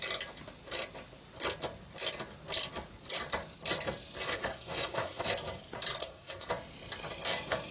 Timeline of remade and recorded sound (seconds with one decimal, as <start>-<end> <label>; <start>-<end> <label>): 0.0-4.3 recorded; 4.3-5.2 remade; 5.2-6.0 recorded; 6.0-6.5 remade; 6.5-7.7 recorded